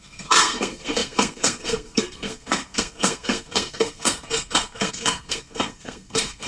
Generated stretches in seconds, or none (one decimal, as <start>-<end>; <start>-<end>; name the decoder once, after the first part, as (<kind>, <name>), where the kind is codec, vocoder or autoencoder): 0.0-6.5 (codec, SNAC)